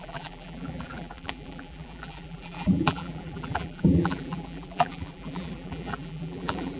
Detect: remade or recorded remade